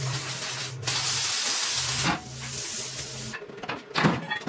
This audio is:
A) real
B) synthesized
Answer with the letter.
A